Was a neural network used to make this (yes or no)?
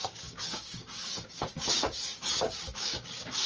yes